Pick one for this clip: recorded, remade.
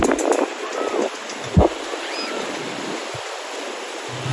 recorded